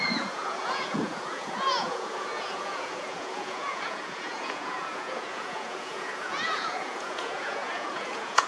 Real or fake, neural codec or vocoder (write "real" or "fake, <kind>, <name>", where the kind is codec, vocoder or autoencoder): fake, vocoder, Vocos